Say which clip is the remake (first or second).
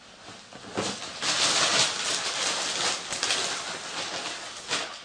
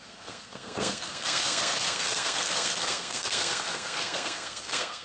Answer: second